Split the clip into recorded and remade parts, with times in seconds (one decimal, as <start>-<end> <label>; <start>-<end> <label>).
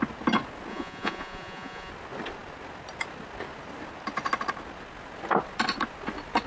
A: 0.0-0.7 recorded; 0.7-1.9 remade; 1.9-6.5 recorded